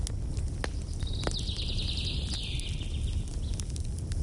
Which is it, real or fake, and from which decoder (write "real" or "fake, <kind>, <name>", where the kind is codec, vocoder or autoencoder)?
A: real